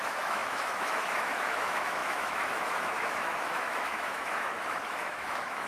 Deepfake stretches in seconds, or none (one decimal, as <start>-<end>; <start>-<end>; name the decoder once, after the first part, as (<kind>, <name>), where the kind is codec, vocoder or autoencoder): 0.0-5.7 (autoencoder, DAC-VAE)